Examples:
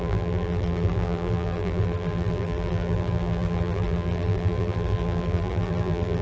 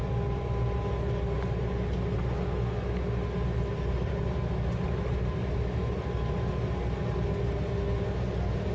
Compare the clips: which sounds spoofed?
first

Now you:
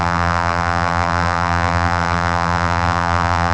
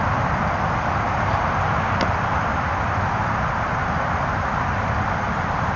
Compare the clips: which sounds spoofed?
first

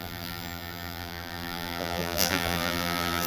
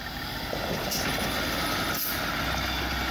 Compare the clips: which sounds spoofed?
first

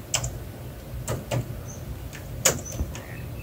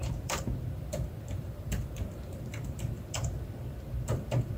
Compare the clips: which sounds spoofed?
second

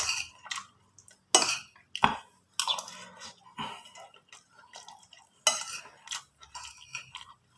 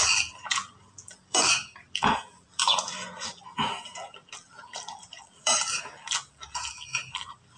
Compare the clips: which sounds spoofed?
second